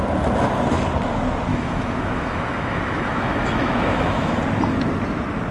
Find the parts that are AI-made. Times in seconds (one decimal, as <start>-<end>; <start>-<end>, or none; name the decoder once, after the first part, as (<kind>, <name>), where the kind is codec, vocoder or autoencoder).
1.5-4.4 (autoencoder, DAC-VAE)